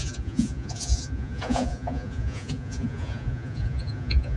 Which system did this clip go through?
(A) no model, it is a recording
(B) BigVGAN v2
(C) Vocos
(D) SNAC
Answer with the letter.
C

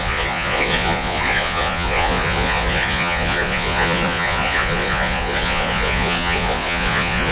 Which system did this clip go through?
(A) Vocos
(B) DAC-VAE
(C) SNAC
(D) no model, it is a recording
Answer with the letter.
A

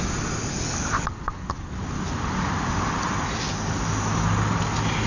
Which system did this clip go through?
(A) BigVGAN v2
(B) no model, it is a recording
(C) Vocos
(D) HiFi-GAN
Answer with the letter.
B